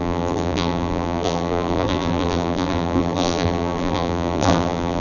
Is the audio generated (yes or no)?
yes